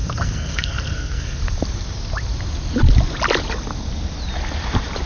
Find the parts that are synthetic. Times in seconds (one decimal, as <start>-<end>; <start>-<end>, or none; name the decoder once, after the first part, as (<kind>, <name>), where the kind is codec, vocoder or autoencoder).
0.0-1.4 (codec, SNAC)